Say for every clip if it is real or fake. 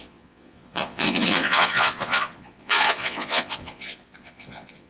fake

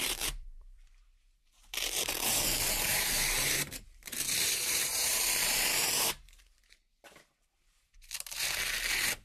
fake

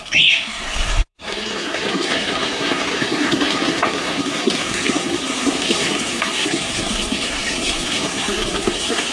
fake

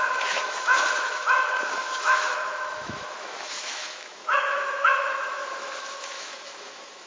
fake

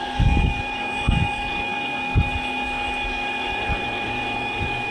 fake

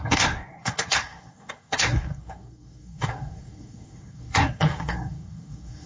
fake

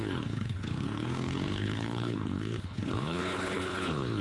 fake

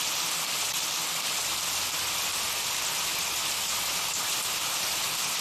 real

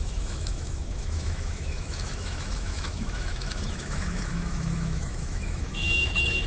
fake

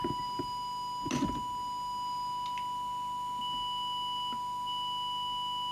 real